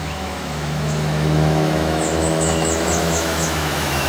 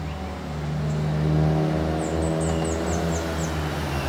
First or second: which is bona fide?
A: second